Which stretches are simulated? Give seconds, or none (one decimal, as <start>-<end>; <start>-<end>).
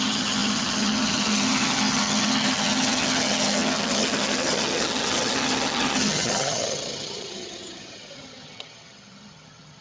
0.0-9.8